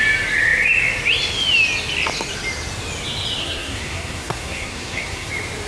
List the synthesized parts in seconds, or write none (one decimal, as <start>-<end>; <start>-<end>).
3.4-5.3